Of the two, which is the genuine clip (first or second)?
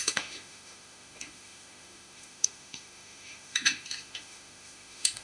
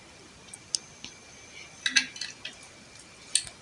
second